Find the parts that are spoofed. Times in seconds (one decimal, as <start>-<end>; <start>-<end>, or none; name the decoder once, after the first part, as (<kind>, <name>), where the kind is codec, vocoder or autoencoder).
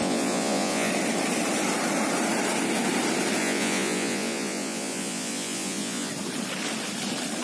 0.0-0.9 (vocoder, Vocos); 3.4-6.1